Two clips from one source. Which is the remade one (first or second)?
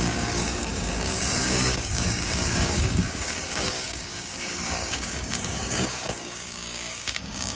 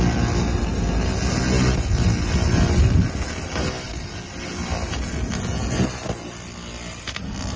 first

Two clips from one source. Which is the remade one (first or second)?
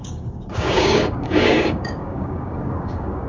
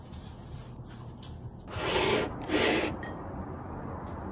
first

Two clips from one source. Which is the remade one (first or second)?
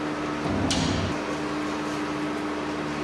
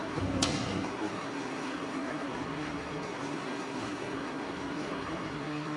second